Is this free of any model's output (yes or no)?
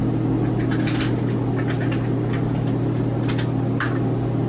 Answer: yes